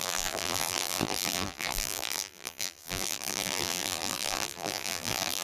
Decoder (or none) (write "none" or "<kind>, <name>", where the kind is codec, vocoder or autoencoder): vocoder, BigVGAN v2